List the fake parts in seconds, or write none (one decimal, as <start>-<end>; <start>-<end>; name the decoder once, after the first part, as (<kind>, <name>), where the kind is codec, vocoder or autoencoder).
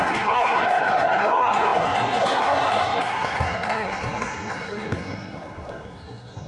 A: 0.0-6.5 (codec, SNAC)